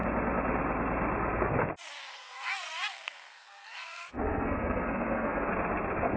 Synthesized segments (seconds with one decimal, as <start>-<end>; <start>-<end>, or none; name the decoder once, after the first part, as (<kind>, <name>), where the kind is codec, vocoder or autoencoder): 2.1-5.5 (codec, SNAC)